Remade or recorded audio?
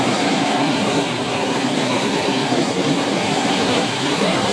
remade